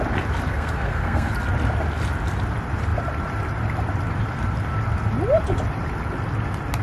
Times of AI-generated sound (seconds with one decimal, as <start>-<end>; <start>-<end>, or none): 0.5-1.3